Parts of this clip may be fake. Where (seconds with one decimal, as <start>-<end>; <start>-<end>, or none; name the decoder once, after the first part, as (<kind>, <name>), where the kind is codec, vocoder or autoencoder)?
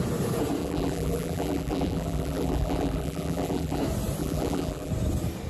0.6-3.8 (vocoder, BigVGAN v2); 4.2-4.9